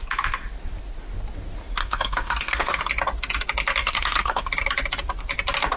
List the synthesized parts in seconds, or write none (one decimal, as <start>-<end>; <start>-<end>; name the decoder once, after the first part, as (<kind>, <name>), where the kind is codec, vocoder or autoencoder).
1.8-2.8 (codec, SNAC); 3.8-4.5